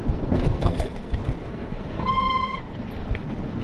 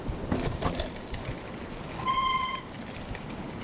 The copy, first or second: first